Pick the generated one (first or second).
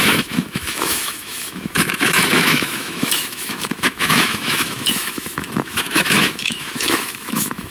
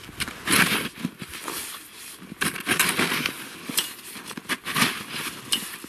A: first